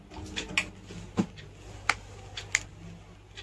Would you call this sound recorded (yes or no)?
yes